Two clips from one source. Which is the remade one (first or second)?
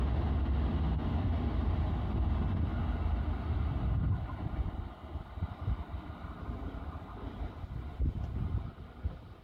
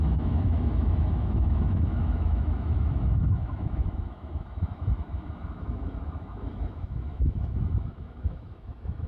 second